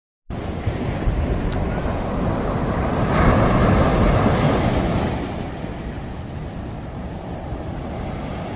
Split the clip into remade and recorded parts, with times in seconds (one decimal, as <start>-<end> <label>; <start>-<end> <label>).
0.0-8.6 recorded